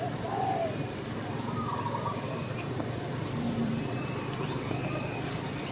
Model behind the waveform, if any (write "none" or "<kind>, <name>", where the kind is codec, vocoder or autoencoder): vocoder, BigVGAN v2